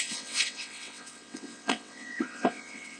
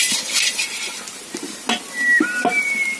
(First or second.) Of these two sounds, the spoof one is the first